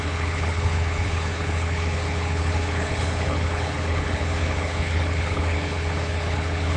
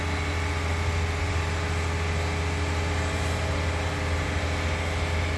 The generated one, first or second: first